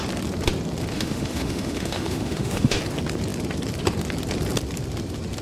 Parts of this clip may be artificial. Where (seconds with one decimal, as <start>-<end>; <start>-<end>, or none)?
0.9-2.8